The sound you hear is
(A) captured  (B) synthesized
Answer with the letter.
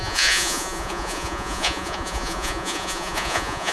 B